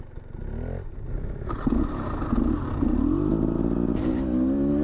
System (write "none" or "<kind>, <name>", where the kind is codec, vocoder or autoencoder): none